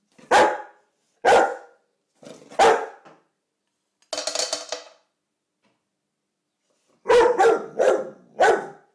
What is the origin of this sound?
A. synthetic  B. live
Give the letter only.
B